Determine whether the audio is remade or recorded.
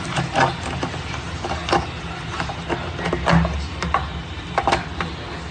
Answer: recorded